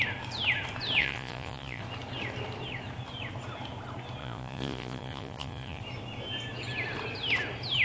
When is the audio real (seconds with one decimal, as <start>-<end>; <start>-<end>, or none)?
0.0-1.0; 1.8-4.2; 5.8-7.8